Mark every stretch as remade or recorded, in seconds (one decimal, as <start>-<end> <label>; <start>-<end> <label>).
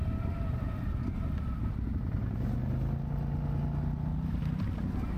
0.0-5.2 recorded